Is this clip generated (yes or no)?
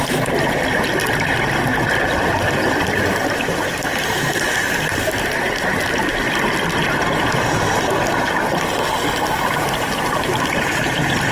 no